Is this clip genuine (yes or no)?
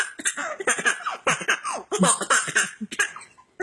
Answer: yes